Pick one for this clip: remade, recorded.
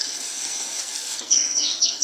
remade